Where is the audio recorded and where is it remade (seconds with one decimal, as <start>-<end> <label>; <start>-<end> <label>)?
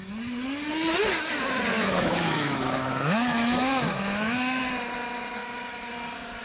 0.0-1.7 recorded; 1.7-4.7 remade; 4.7-5.4 recorded; 5.4-5.9 remade; 5.9-6.4 recorded